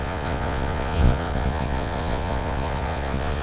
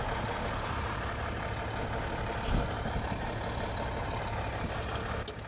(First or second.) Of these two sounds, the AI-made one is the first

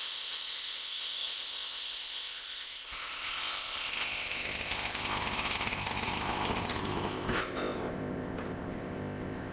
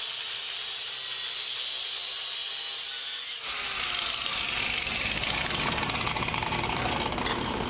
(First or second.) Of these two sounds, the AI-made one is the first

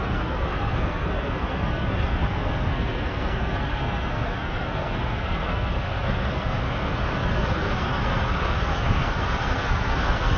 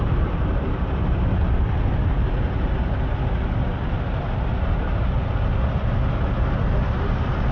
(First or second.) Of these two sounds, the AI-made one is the first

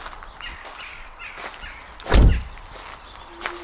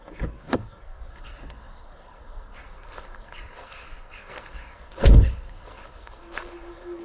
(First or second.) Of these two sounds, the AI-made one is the second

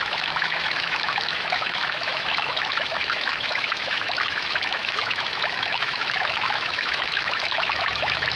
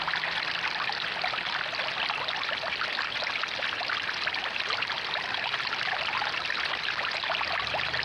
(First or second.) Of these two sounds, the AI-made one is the first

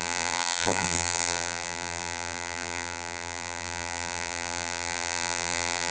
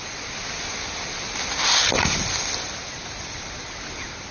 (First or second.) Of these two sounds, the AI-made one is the first